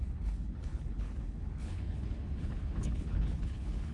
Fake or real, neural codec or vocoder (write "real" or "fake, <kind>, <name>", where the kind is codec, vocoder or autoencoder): fake, codec, HILCodec